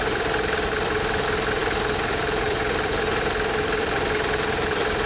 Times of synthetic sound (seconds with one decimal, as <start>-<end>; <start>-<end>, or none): 0.0-5.1